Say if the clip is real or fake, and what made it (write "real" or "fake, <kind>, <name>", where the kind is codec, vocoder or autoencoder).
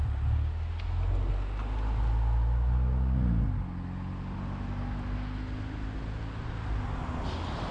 real